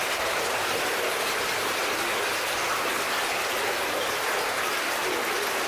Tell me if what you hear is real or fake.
real